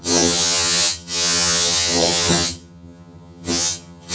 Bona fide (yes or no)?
no